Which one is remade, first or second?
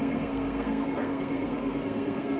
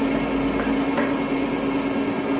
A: first